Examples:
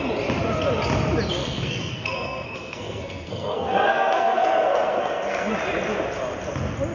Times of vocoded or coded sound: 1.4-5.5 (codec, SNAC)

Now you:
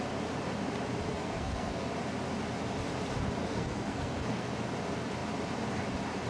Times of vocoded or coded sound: 1.1-1.9 (codec, SNAC); 3.4-4.5

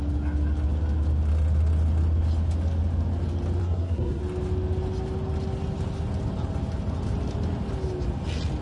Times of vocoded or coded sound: 3.6-4.2 (codec, SNAC)

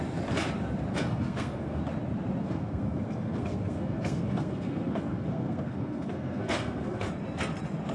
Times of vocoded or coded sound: 0.9-1.8 (codec, SNAC); 2.4-7.1